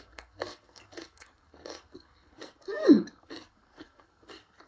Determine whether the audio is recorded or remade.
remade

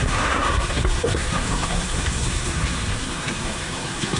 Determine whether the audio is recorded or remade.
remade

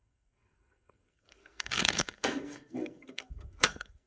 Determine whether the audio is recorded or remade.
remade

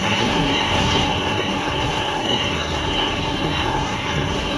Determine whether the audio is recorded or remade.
remade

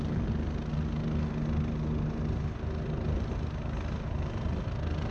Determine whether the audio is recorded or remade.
recorded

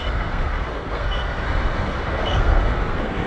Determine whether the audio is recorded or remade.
remade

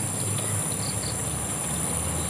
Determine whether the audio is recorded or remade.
recorded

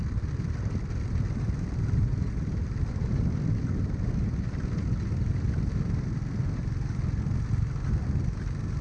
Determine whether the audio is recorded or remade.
recorded